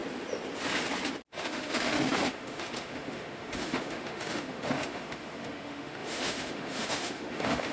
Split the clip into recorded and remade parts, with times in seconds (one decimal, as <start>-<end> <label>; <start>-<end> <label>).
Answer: 0.0-1.3 recorded; 1.3-7.7 remade

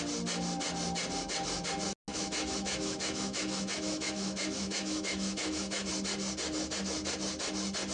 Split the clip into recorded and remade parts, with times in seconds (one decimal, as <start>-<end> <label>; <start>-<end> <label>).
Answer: 0.0-2.1 recorded; 2.1-5.9 remade; 5.9-7.9 recorded

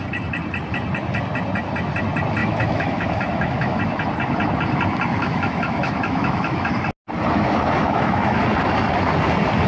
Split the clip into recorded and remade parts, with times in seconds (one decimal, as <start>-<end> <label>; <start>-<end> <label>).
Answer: 0.0-2.4 recorded; 2.4-3.8 remade; 3.8-5.2 recorded; 5.2-6.7 remade; 6.7-7.8 recorded; 7.8-8.4 remade; 8.4-9.7 recorded

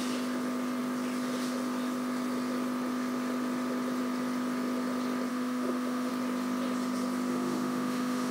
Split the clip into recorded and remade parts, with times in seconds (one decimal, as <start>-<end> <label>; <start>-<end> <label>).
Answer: 0.0-5.3 recorded; 5.3-6.1 remade; 6.1-7.3 recorded; 7.3-8.3 remade